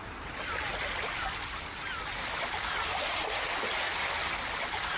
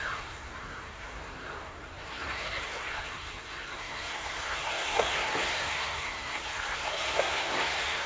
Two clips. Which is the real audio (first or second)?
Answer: first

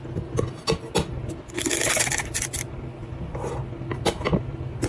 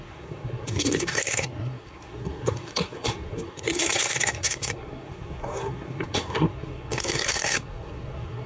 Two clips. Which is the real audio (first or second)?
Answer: first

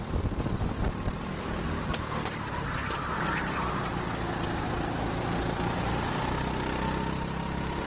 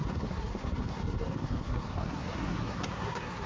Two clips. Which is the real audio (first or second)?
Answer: first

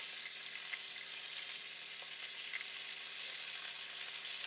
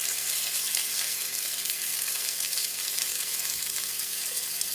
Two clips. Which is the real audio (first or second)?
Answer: first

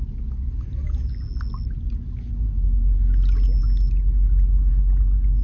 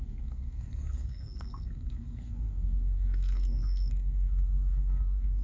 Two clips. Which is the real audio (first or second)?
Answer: first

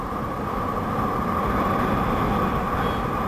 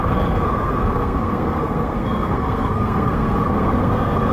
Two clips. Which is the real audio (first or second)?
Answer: first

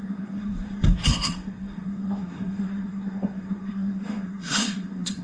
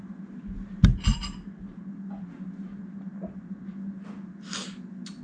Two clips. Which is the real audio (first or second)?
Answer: second